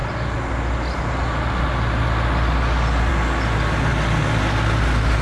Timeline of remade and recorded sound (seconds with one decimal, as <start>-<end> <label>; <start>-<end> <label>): 0.0-5.2 recorded